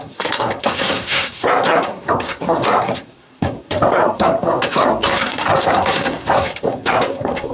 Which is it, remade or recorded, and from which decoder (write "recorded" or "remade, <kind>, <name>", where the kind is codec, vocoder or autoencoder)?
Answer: remade, codec, SNAC